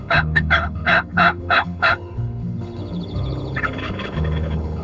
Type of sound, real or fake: fake